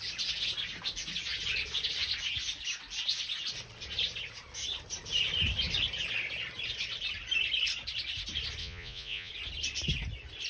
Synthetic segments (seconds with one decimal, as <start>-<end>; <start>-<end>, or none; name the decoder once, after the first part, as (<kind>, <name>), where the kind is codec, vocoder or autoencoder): 8.6-9.3 (vocoder, Vocos)